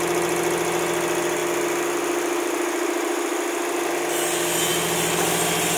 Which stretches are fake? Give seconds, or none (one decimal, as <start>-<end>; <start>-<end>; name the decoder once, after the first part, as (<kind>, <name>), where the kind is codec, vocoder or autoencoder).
none

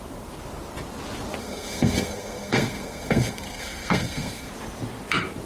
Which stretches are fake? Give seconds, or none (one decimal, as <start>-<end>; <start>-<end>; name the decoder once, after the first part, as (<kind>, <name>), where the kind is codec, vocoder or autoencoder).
1.4-4.5 (codec, SNAC)